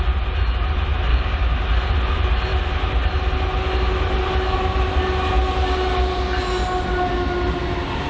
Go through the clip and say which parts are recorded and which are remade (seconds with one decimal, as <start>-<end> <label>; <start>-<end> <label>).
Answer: 0.0-1.1 recorded; 1.1-1.6 remade; 1.6-8.1 recorded